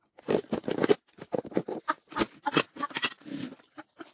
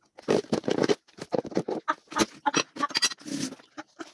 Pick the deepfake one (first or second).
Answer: first